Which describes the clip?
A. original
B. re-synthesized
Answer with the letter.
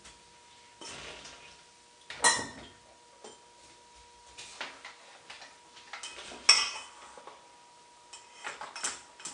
A